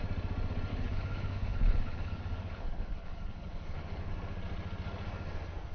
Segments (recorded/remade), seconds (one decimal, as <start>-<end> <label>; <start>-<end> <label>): 0.0-0.7 recorded; 0.7-4.1 remade; 4.1-5.7 recorded

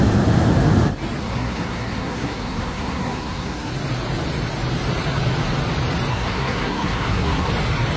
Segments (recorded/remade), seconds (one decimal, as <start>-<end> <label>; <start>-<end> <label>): 0.0-1.2 recorded; 1.2-3.7 remade; 3.7-6.1 recorded; 6.1-7.5 remade; 7.5-8.0 recorded

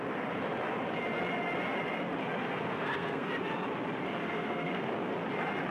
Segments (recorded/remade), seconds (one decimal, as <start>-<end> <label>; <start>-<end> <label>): 0.0-2.4 recorded; 2.4-3.3 remade; 3.3-4.2 recorded; 4.2-4.9 remade; 4.9-5.7 recorded

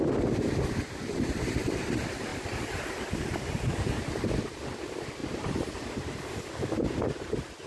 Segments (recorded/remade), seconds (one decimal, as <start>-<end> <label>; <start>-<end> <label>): 0.0-5.2 recorded; 5.2-5.7 remade; 5.7-7.7 recorded

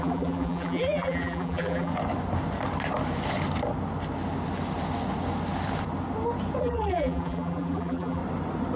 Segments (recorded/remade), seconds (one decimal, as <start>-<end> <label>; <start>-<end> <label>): 0.0-1.9 remade; 1.9-6.6 recorded; 6.6-8.2 remade; 8.2-8.8 recorded

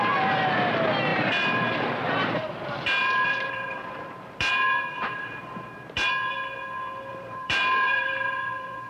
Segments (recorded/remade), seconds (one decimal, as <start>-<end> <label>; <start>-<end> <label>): 0.0-1.1 recorded; 1.1-6.1 remade; 6.1-7.1 recorded; 7.1-8.9 remade